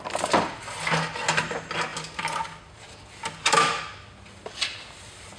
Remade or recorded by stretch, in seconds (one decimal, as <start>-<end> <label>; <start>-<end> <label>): 0.0-5.4 recorded